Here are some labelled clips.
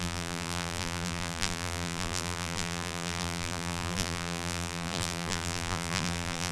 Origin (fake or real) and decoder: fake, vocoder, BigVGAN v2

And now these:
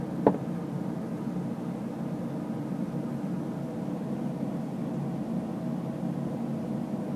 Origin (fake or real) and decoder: real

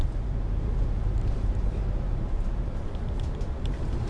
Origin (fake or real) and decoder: fake, vocoder, BigVGAN v2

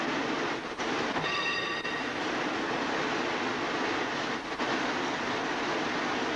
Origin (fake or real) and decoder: real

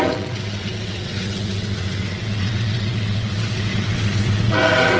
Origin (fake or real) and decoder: fake, vocoder, WaveNeXt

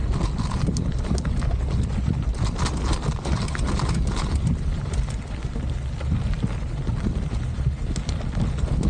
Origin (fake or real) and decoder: real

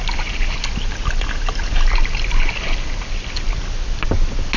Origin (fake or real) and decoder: real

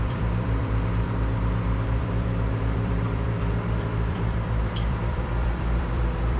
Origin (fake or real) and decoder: fake, vocoder, BigVGAN v2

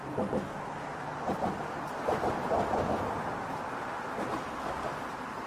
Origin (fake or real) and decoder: real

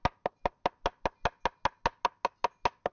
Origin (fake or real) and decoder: real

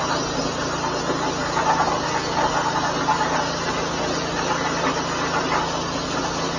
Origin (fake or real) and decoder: real